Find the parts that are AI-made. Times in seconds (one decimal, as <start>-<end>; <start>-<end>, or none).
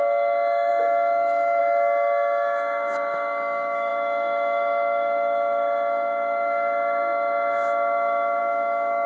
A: 0.0-9.1